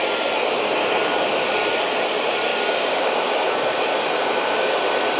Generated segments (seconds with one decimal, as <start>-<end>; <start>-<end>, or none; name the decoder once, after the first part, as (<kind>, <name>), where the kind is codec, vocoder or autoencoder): 2.5-4.8 (codec, DAC)